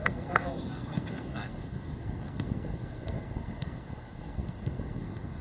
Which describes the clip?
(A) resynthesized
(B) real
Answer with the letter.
A